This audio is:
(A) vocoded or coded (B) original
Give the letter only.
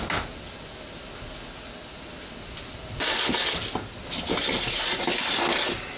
B